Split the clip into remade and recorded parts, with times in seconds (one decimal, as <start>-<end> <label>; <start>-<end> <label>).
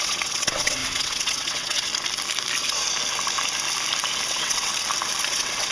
0.0-1.9 remade; 1.9-4.3 recorded; 4.3-4.7 remade; 4.7-5.3 recorded; 5.3-5.7 remade